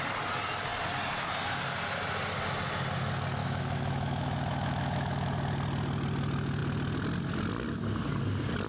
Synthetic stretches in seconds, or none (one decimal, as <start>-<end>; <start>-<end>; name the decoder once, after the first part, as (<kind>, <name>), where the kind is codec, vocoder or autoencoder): 3.4-5.3 (autoencoder, DAC-VAE)